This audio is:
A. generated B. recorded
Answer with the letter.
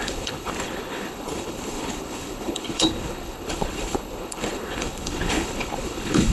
A